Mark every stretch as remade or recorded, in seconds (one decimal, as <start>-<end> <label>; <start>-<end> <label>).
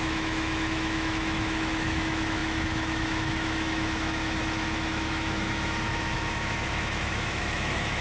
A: 0.0-8.0 remade